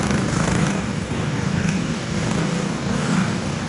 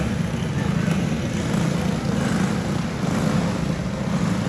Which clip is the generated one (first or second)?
first